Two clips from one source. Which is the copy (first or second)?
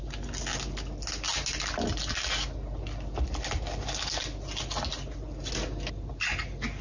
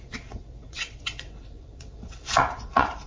second